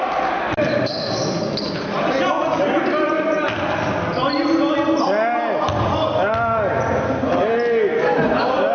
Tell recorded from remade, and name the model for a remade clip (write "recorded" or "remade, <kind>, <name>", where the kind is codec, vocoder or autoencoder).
recorded